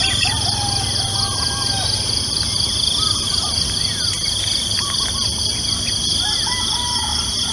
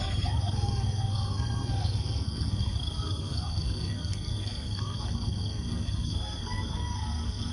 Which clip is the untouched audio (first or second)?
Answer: first